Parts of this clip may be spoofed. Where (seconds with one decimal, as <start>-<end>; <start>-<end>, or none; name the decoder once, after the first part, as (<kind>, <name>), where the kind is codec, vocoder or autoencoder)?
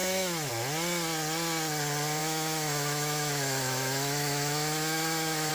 0.0-0.5 (autoencoder, DAC-VAE); 2.2-5.5